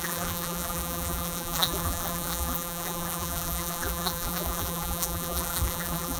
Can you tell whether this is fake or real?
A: fake